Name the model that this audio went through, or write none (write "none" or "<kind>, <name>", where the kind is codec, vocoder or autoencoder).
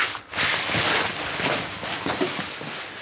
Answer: none